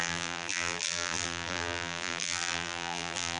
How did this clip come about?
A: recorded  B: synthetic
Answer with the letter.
B